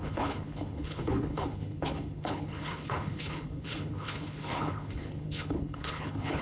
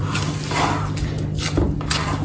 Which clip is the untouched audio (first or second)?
second